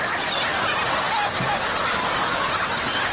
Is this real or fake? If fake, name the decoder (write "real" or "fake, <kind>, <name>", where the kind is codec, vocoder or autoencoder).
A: real